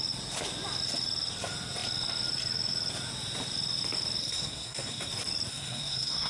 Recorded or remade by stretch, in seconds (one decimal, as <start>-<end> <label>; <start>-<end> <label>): 0.0-4.2 recorded; 4.2-5.1 remade; 5.1-5.5 recorded; 5.5-6.3 remade